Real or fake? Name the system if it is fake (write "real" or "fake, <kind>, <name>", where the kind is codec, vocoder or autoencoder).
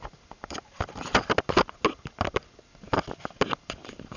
real